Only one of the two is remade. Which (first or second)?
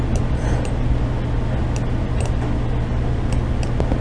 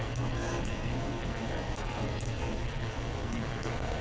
second